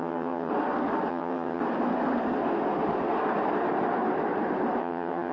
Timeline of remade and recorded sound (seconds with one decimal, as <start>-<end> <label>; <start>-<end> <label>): 0.0-0.5 remade; 0.5-1.1 recorded; 1.1-1.6 remade; 1.6-4.8 recorded; 4.8-5.3 remade